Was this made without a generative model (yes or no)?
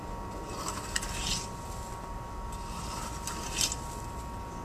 yes